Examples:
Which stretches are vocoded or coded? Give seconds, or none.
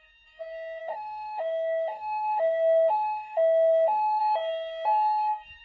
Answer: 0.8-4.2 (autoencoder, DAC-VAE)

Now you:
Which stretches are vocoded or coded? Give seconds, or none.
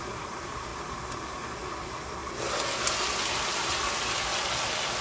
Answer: 0.0-0.7 (vocoder, BigVGAN v2); 3.7-4.3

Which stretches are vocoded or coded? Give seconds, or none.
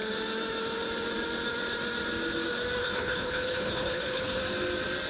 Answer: 2.8-4.4 (codec, HILCodec)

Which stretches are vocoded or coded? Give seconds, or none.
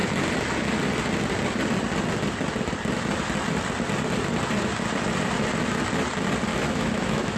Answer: 6.5-7.4 (autoencoder, DAC-VAE)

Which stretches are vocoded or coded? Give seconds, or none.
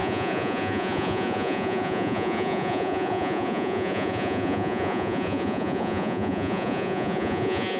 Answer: 0.0-7.8 (vocoder, Vocos)